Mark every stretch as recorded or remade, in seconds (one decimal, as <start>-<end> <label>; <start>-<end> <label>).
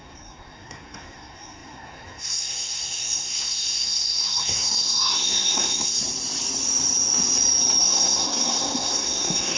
0.0-6.0 remade; 6.0-7.8 recorded; 7.8-9.6 remade